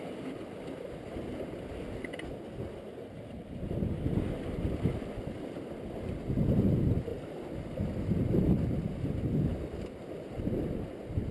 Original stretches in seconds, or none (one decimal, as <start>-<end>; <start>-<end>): 0.0-7.1; 7.7-11.3